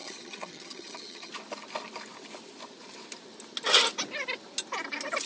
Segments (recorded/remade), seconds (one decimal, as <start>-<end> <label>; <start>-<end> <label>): 0.0-1.3 remade; 1.3-5.3 recorded